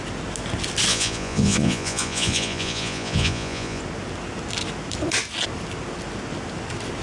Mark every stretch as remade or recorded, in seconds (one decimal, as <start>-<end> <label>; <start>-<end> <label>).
0.0-0.9 recorded; 0.9-3.8 remade; 3.8-7.0 recorded